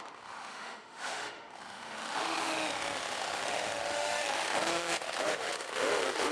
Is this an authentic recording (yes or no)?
no